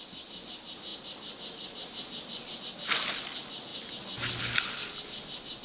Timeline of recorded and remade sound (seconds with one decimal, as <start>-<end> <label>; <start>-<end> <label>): 0.0-5.6 recorded